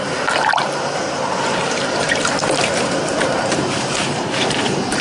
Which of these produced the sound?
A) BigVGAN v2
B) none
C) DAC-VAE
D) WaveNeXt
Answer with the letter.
A